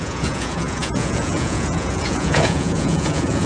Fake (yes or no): yes